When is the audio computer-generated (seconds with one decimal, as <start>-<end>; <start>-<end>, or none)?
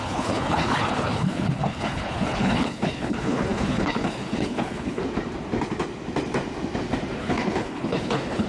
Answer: 0.0-5.0; 7.2-8.5